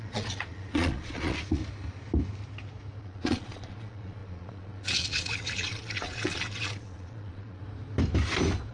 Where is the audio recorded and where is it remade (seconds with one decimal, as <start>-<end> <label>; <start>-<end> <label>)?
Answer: 0.0-1.6 remade; 1.6-3.0 recorded; 3.0-7.6 remade; 7.6-8.7 recorded